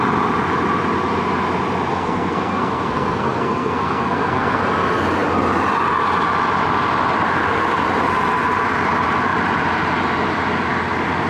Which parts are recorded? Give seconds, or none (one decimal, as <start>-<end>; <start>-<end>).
0.0-1.9; 4.6-11.3